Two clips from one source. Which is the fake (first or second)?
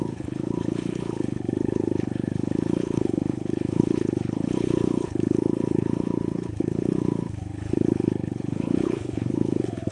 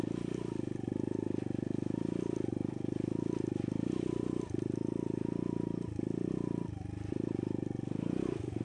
first